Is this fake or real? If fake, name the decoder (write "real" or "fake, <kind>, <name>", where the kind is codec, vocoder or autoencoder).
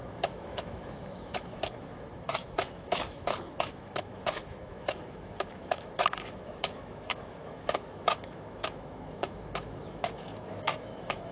fake, autoencoder, DAC-VAE